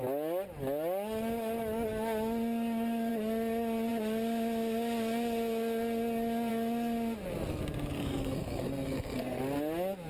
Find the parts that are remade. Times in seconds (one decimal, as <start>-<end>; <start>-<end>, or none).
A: 7.9-9.4